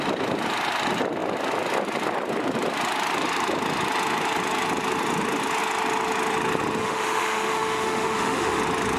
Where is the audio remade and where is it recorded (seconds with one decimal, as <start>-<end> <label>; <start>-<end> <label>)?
0.0-6.8 recorded; 6.8-8.6 remade; 8.6-9.0 recorded